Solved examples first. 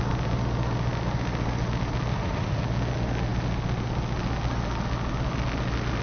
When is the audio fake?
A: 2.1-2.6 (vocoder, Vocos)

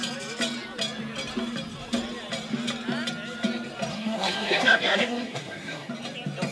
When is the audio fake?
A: 3.9-5.9 (codec, SNAC)

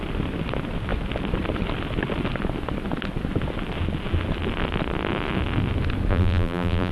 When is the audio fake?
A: 6.1-6.9 (vocoder, BigVGAN v2)

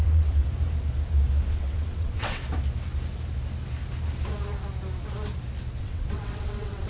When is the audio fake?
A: 0.0-0.4 (vocoder, WaveNeXt); 1.5-2.4; 5.8-6.9

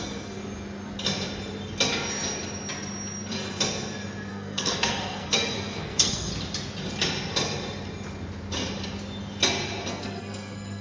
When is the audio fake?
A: 0.0-0.4 (codec, SNAC); 4.3-6.3; 9.9-10.8

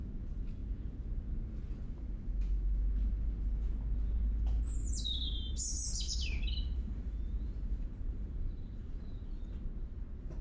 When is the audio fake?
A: 4.8-9.6 (vocoder, BigVGAN v2)